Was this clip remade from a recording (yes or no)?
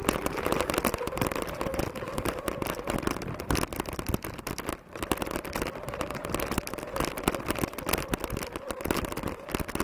no